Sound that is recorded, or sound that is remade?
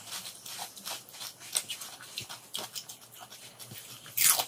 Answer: recorded